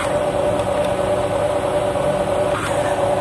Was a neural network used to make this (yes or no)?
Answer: no